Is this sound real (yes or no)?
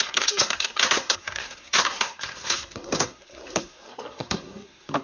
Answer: no